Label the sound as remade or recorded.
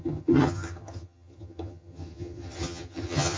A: remade